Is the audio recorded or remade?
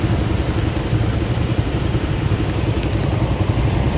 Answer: recorded